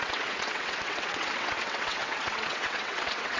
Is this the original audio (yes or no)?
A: no